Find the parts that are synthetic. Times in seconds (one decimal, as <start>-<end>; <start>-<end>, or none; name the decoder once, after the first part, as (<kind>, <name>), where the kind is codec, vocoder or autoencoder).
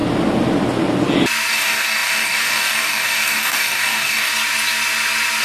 1.5-4.3 (codec, DAC)